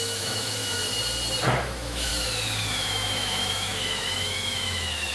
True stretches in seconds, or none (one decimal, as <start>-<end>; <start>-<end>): 0.8-1.6; 2.1-2.7